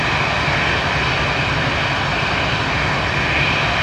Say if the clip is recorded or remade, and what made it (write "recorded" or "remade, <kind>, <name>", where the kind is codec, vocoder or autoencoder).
recorded